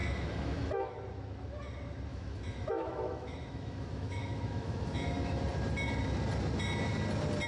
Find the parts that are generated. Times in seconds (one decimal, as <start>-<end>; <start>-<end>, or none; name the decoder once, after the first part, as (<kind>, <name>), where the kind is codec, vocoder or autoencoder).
0.0-1.0 (autoencoder, DAC-VAE); 2.1-5.4